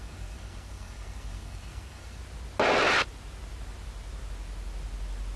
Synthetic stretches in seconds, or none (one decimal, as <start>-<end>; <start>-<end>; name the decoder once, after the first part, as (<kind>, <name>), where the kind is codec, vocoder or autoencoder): 0.0-2.2 (codec, SNAC)